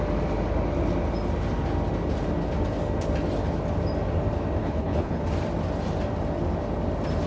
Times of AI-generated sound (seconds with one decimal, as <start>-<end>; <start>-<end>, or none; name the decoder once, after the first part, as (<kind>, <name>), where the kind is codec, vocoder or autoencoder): 4.6-5.2 (codec, HILCodec)